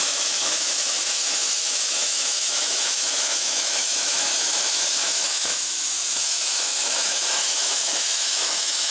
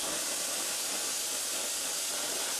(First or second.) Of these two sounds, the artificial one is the first